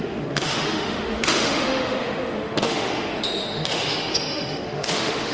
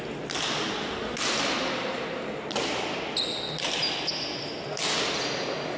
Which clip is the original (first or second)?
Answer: second